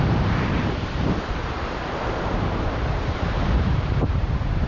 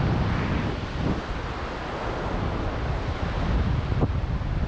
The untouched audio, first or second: second